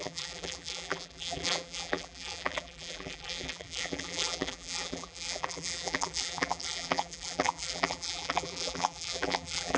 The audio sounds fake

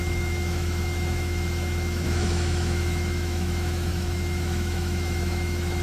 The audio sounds fake